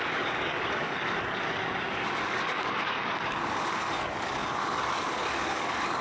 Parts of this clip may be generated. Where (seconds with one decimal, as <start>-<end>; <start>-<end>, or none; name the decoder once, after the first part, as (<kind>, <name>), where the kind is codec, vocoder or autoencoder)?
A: 0.0-6.0 (codec, DAC)